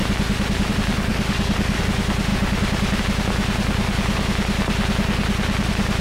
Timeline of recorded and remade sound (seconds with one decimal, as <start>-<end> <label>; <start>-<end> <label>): 0.0-1.1 recorded; 1.1-1.8 remade; 1.8-6.0 recorded